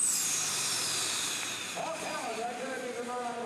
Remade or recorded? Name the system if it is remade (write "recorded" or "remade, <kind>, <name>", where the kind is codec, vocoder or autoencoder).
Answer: remade, vocoder, BigVGAN v2